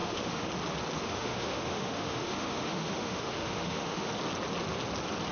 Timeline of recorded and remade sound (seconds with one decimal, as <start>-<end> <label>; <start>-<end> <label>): 0.0-0.5 remade; 0.5-1.0 recorded; 1.0-4.1 remade; 4.1-5.3 recorded